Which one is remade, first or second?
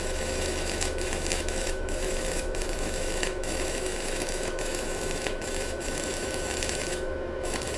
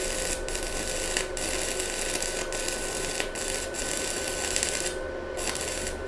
first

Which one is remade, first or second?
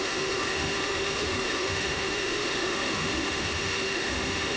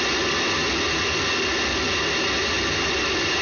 first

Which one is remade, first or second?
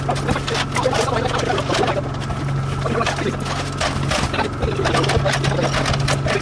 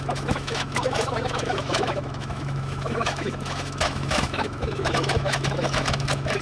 second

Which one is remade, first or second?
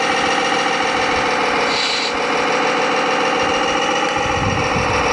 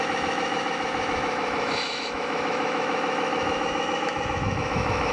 second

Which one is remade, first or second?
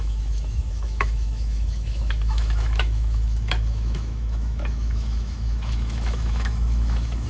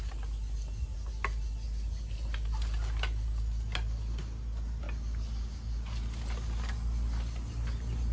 first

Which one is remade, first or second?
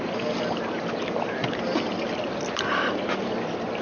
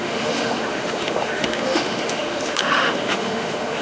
second